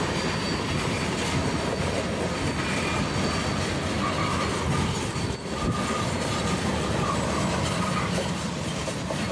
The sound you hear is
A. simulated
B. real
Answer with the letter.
B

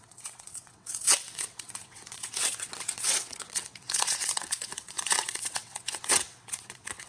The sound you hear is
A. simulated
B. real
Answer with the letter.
A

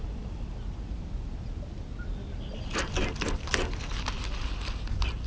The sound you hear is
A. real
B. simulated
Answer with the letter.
A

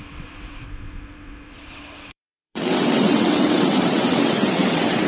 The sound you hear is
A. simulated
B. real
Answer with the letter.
A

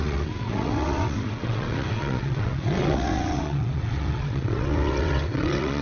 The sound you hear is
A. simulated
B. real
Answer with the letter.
A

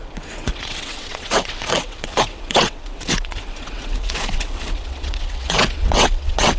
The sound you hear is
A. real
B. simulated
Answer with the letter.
B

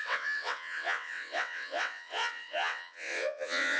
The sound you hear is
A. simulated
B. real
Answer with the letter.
A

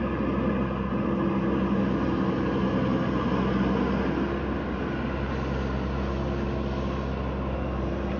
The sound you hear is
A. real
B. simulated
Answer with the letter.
A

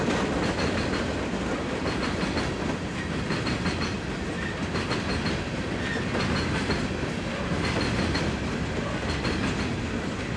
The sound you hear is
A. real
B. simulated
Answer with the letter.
A